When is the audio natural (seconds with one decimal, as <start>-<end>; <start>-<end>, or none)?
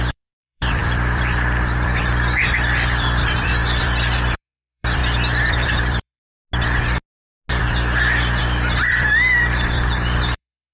5.0-5.5; 6.2-8.4